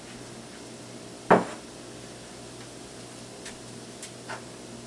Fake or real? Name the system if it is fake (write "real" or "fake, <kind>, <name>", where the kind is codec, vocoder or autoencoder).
real